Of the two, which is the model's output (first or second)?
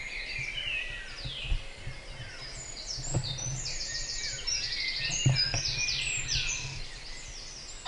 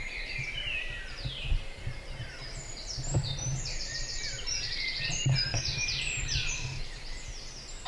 second